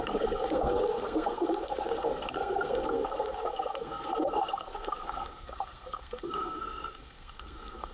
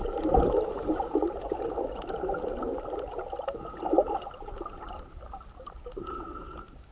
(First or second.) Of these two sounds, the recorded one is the second